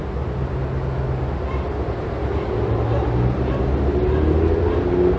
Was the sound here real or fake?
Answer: real